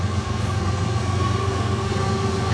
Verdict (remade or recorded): remade